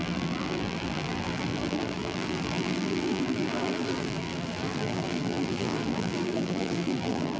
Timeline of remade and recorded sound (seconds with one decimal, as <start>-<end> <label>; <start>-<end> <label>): 0.0-7.4 remade